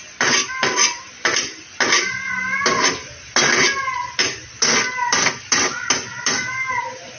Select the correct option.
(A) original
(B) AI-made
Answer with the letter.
A